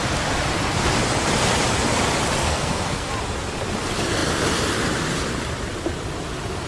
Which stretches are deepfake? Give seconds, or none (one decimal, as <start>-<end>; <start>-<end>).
2.4-3.1